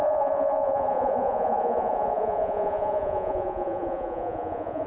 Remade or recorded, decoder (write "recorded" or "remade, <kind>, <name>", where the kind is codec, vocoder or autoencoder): remade, vocoder, Vocos